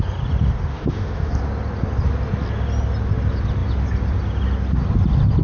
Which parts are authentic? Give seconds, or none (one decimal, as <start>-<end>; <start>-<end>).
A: 0.0-0.7; 1.3-5.4

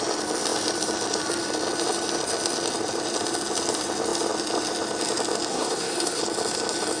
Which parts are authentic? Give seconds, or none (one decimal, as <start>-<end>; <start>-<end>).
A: 0.0-5.5; 6.2-7.0

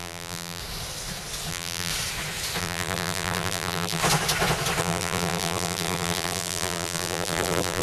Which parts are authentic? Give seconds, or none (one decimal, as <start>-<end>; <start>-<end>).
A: 0.6-1.5; 1.9-2.6; 4.0-4.8

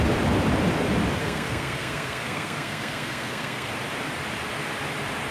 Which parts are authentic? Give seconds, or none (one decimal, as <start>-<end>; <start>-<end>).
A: 0.0-1.2; 3.7-5.3